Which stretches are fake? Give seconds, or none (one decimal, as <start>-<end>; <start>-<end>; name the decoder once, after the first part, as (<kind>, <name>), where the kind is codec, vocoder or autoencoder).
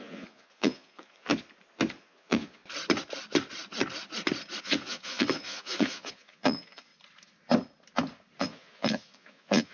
0.0-1.3 (vocoder, Vocos); 2.0-2.6; 4.6-6.9; 8.4-9.7